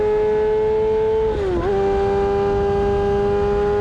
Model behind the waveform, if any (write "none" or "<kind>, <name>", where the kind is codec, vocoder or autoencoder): none